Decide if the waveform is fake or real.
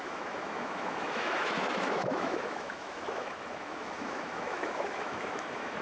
fake